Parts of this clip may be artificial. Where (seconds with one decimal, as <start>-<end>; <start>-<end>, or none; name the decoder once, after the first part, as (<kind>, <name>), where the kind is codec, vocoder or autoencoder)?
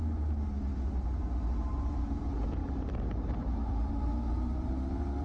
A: 1.7-2.2 (vocoder, BigVGAN v2); 2.6-4.7